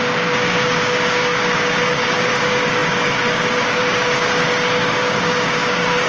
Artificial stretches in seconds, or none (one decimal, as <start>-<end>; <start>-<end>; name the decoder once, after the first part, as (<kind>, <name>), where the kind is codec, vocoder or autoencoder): 0.0-6.1 (codec, DAC)